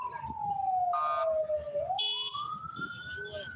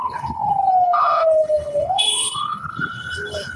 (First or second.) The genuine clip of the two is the first